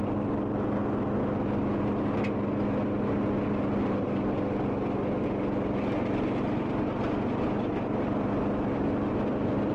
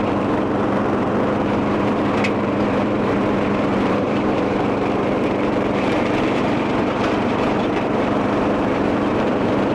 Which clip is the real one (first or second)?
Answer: first